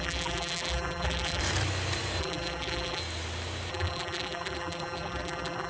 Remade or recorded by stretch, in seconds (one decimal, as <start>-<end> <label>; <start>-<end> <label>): 0.0-1.4 remade; 1.4-2.2 recorded; 2.2-3.0 remade; 3.0-3.7 recorded; 3.7-5.7 remade